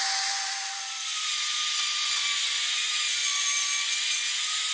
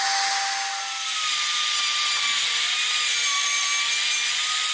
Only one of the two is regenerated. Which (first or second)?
first